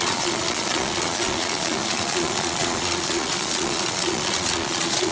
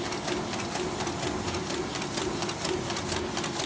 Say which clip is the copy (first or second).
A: first